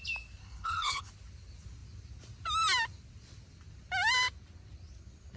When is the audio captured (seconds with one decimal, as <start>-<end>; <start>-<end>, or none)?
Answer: 0.0-0.4; 1.1-5.4